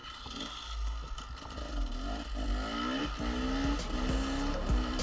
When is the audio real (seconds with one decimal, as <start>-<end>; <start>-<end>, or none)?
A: 0.0-5.0